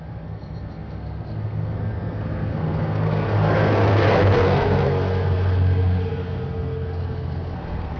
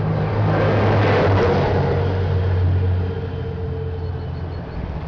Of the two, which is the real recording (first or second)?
second